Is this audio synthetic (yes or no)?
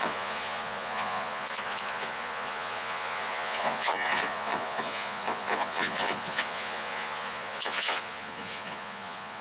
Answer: yes